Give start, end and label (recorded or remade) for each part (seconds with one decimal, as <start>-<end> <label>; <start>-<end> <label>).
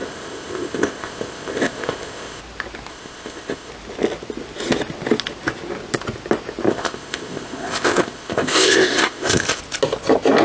0.0-2.4 remade; 2.4-2.9 recorded; 2.9-3.7 remade; 3.7-6.7 recorded; 6.7-9.6 remade; 9.6-10.4 recorded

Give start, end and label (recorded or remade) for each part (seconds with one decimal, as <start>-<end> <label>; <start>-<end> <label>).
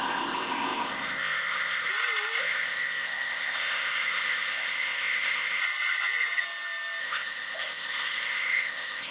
0.0-1.9 remade; 1.9-2.4 recorded; 2.4-5.6 remade; 5.6-7.0 recorded; 7.0-9.1 remade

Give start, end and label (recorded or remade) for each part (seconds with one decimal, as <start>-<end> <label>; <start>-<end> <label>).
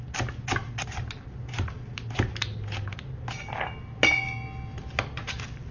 0.0-5.7 recorded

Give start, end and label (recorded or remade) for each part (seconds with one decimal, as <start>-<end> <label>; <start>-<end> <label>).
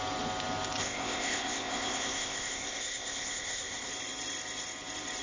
0.0-0.8 recorded; 0.8-3.9 remade; 3.9-5.2 recorded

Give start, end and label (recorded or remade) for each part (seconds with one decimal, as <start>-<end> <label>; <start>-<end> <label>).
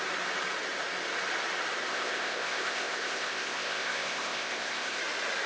0.0-1.9 recorded; 1.9-5.0 remade; 5.0-5.5 recorded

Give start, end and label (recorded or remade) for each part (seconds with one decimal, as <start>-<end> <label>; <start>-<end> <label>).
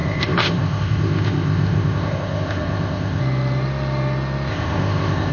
0.0-3.2 remade; 3.2-4.5 recorded; 4.5-5.3 remade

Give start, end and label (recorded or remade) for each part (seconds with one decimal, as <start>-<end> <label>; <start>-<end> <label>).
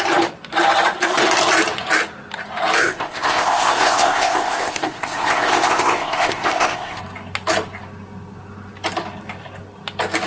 0.0-2.8 recorded; 2.8-7.0 remade; 7.0-10.3 recorded